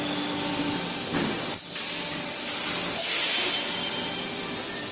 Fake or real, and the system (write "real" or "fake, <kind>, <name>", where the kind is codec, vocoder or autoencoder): real